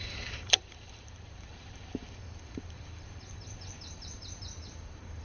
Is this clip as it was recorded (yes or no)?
no